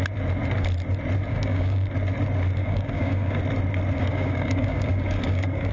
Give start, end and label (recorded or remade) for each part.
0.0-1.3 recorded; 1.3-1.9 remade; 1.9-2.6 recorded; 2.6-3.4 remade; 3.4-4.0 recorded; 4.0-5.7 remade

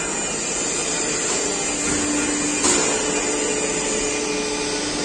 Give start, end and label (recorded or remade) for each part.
0.0-0.8 recorded; 0.8-1.3 remade; 1.3-5.0 recorded

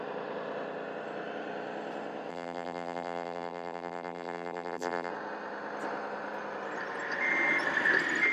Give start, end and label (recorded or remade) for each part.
0.0-2.3 recorded; 2.3-5.1 remade; 5.1-8.3 recorded

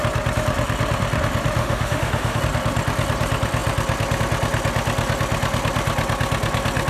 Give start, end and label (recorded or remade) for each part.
0.0-1.6 recorded; 1.6-2.4 remade; 2.4-6.9 recorded

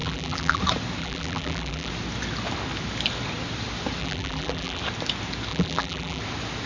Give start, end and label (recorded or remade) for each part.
0.0-0.6 remade; 0.6-1.0 recorded; 1.0-1.9 remade; 1.9-4.0 recorded; 4.0-4.8 remade; 4.8-5.5 recorded; 5.5-6.2 remade; 6.2-6.7 recorded

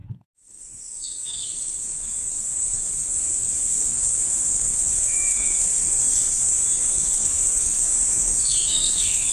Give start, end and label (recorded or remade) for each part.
0.0-9.3 remade

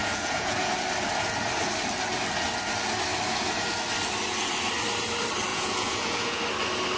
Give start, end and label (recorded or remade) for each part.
0.0-0.7 remade; 0.7-5.5 recorded; 5.5-6.4 remade; 6.4-7.0 recorded